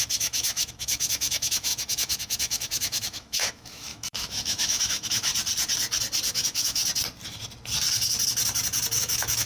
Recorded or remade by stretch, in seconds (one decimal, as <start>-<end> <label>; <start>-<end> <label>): 0.0-5.3 remade; 5.3-6.3 recorded; 6.3-6.8 remade; 6.8-9.0 recorded; 9.0-9.5 remade